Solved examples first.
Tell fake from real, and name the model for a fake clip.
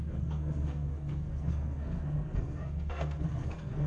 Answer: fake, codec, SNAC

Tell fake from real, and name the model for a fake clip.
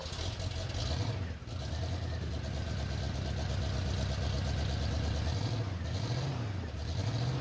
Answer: real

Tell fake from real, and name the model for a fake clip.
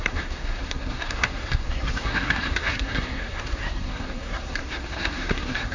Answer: fake, codec, SNAC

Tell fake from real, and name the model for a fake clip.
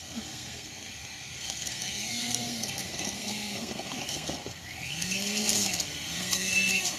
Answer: fake, codec, SNAC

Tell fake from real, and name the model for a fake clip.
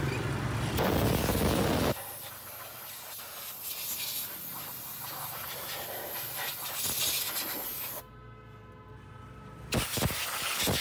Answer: real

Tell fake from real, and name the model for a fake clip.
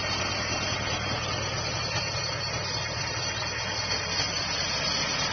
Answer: real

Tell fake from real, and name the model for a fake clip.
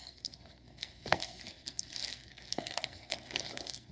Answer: fake, codec, SNAC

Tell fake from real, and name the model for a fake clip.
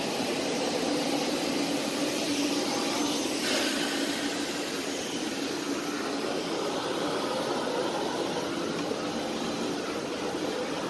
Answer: real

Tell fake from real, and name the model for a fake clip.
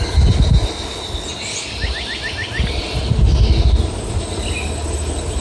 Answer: real